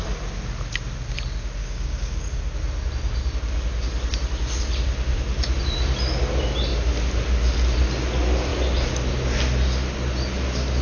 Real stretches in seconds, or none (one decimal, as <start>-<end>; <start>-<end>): 0.0-1.6; 2.4-10.8